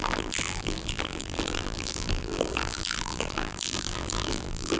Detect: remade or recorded remade